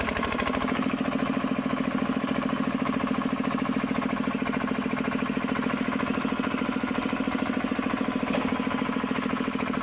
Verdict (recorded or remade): recorded